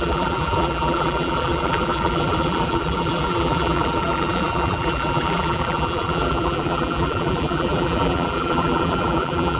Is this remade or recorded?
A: remade